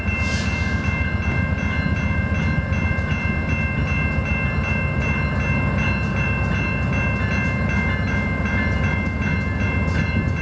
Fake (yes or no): no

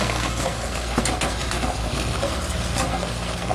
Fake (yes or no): yes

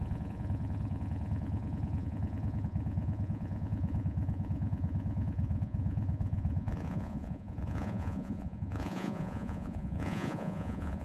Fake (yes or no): yes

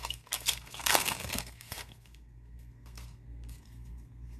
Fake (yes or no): yes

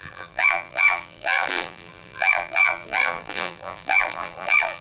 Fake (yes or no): yes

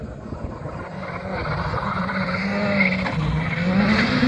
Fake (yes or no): no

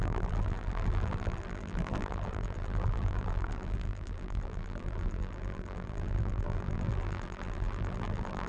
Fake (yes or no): yes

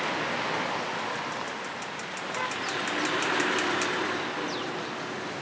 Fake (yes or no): no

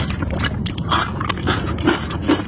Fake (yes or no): yes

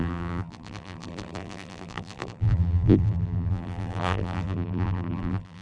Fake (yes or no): yes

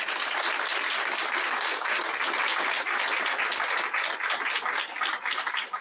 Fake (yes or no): no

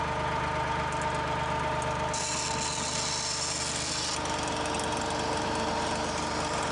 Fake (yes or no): no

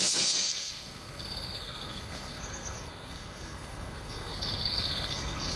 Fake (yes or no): yes